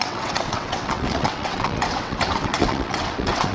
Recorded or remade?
remade